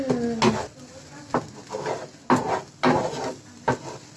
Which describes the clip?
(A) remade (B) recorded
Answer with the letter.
B